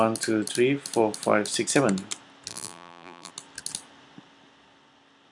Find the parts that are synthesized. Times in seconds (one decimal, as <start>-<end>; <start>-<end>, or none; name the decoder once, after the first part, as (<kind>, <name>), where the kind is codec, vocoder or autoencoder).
2.5-3.3 (vocoder, BigVGAN v2)